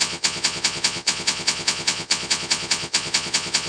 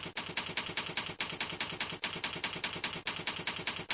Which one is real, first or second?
second